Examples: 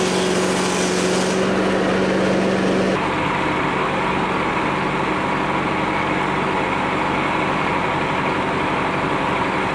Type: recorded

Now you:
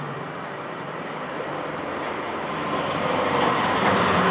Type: remade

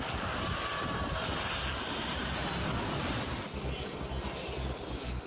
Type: remade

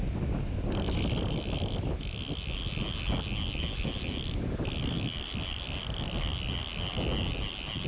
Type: recorded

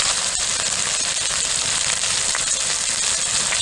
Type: recorded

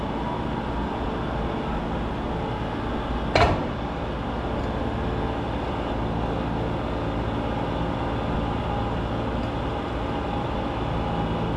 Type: recorded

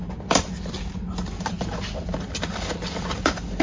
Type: recorded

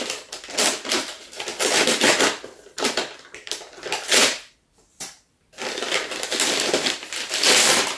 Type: remade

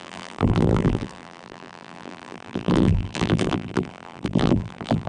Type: remade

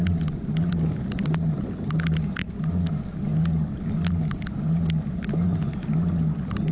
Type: recorded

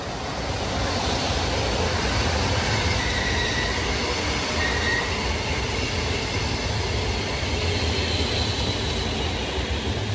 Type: recorded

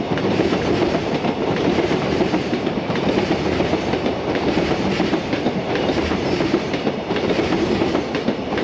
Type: remade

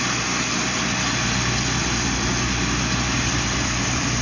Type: remade